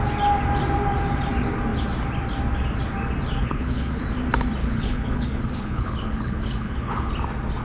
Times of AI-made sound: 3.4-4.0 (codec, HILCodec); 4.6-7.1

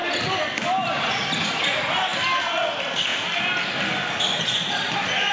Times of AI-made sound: none